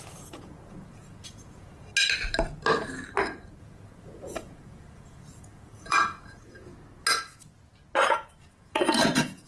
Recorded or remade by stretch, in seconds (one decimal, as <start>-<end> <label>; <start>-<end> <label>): 0.0-1.9 remade; 1.9-3.6 recorded; 3.6-6.7 remade; 6.7-8.4 recorded; 8.4-9.5 remade

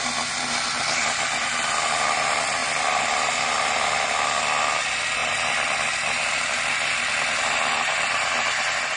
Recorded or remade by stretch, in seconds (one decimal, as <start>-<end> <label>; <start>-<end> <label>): 0.0-9.0 recorded